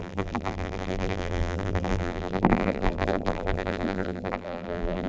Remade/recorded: remade